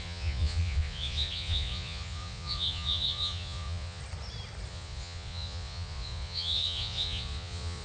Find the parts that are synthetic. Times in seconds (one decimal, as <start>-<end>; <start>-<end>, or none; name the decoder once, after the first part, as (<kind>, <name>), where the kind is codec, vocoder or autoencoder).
0.0-4.0 (vocoder, Vocos); 4.7-7.8